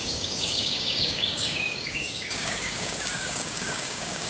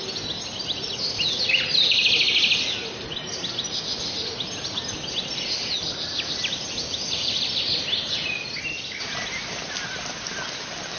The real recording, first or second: second